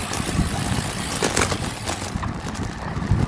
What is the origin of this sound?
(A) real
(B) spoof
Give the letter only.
A